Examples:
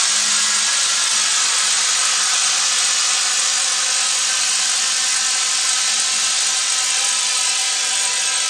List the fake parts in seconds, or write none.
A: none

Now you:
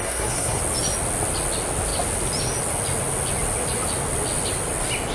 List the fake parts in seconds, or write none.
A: 0.0-0.6 (codec, SNAC)

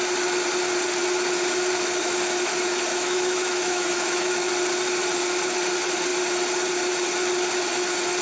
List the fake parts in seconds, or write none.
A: 2.9-4.5 (autoencoder, DAC-VAE)

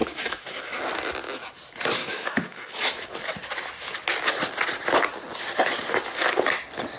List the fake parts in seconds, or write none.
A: 0.0-0.8 (autoencoder, DAC-VAE); 2.0-3.1

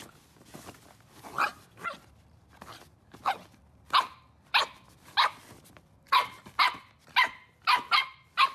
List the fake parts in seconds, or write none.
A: 1.5-6.4 (vocoder, BigVGAN v2)

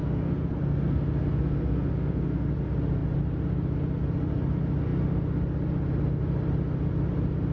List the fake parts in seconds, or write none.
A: 0.0-2.5 (codec, SNAC)